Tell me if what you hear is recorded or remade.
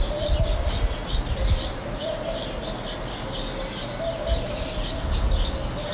recorded